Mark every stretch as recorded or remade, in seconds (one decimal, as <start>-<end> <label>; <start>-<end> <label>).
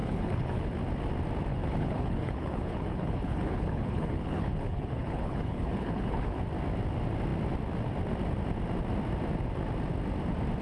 0.0-0.7 remade; 0.7-1.5 recorded; 1.5-6.4 remade; 6.4-10.6 recorded